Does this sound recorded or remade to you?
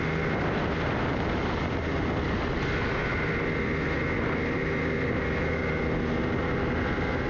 recorded